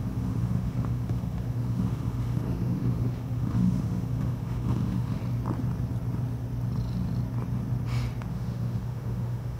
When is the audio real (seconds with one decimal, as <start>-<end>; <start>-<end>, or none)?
5.2-8.3